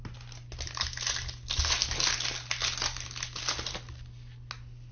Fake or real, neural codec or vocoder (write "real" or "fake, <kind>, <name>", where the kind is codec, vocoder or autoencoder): real